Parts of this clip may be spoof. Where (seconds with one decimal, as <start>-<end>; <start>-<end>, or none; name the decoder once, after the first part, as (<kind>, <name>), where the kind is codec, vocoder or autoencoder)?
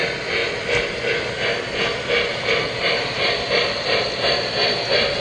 none